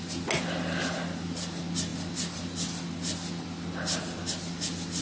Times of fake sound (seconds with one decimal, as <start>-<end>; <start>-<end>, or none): none